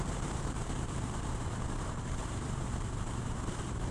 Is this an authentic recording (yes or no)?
no